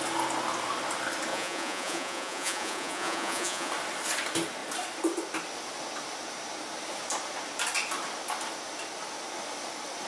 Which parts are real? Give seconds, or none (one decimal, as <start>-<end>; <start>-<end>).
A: 0.0-1.3; 3.7-10.1